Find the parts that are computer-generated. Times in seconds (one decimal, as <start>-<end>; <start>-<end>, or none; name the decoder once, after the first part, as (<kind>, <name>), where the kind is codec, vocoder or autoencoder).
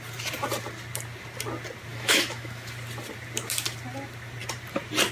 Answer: 1.9-2.7 (autoencoder, DAC-VAE)